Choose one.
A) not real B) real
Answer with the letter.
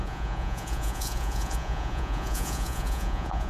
A